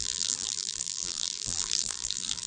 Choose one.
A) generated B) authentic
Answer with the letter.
A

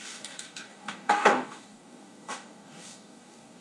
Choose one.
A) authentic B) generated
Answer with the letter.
B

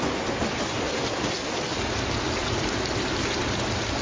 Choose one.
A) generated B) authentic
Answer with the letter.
B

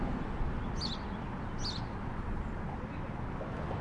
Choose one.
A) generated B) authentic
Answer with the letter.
B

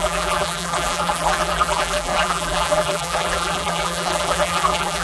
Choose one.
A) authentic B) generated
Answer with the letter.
B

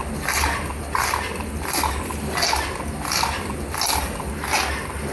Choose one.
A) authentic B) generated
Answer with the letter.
A